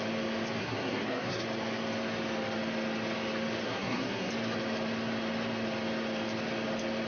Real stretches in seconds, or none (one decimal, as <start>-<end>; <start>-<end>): 0.0-0.6; 1.4-3.6; 4.3-7.1